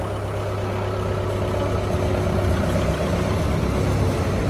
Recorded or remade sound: recorded